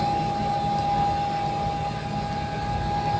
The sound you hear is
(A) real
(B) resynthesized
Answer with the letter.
A